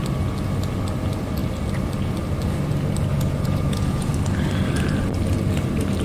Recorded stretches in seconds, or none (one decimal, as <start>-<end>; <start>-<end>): 0.0-3.1; 4.1-6.0